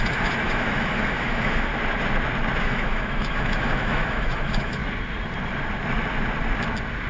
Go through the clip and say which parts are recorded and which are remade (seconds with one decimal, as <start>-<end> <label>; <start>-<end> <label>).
0.0-1.7 remade; 1.7-2.6 recorded; 2.6-4.8 remade; 4.8-7.1 recorded